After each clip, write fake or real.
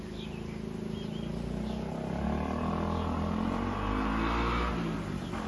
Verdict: real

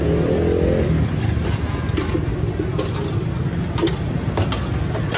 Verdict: real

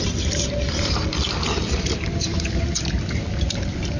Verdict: real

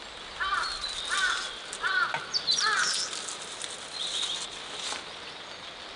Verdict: real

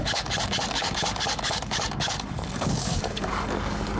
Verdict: fake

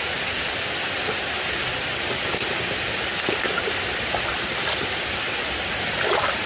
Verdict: real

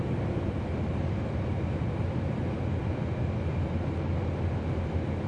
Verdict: real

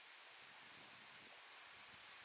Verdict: real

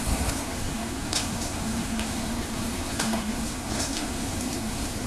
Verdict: fake